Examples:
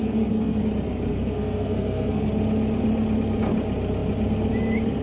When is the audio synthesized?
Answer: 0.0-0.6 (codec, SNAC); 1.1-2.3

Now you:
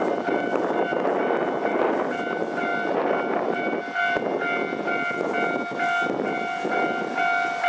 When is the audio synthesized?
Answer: none

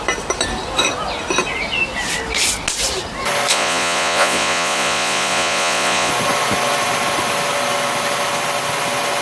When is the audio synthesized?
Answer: 3.5-6.1 (vocoder, Vocos)

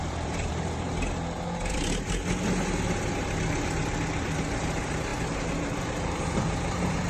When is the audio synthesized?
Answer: 0.0-0.9 (vocoder, BigVGAN v2); 4.2-5.1; 5.8-7.1

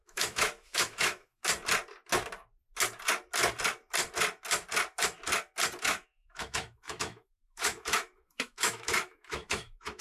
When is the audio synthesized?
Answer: 0.0-1.4 (autoencoder, DAC-VAE); 5.8-10.0

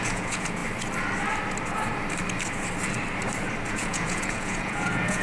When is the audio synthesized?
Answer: 0.0-0.6 (vocoder, Vocos); 3.7-5.2